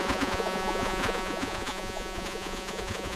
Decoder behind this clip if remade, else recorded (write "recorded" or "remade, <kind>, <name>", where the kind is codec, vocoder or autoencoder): remade, vocoder, Vocos